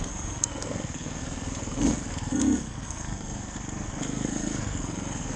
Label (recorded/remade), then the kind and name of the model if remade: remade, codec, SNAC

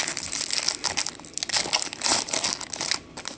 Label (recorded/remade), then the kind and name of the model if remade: recorded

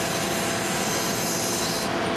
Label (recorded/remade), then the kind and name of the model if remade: recorded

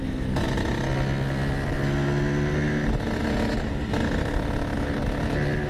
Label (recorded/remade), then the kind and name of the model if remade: recorded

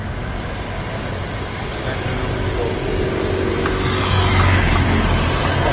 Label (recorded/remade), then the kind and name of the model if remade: recorded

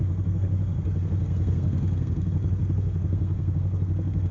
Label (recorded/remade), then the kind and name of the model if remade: remade, codec, SNAC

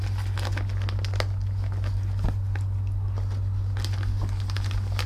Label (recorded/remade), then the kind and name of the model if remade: recorded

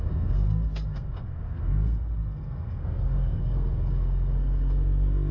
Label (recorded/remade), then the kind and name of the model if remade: remade, codec, SNAC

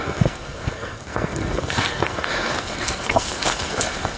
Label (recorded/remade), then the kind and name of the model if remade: remade, codec, SNAC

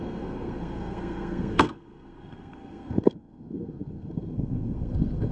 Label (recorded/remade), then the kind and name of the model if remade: remade, codec, SNAC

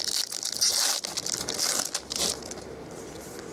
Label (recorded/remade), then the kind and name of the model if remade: recorded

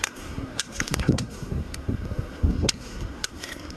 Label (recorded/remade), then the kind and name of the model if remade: remade, codec, SNAC